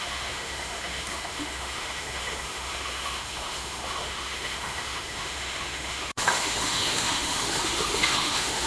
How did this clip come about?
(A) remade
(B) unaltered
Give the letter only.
A